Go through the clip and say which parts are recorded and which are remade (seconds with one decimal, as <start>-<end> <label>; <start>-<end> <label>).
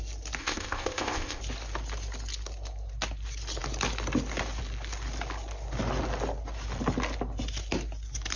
0.0-0.4 recorded; 0.4-1.4 remade; 1.4-8.4 recorded